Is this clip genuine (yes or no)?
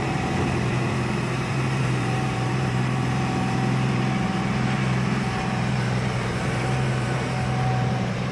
no